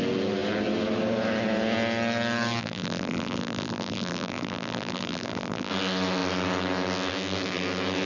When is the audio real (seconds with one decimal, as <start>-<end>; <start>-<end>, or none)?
0.0-2.6; 5.7-8.1